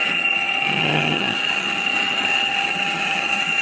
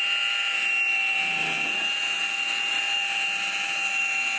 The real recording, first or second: second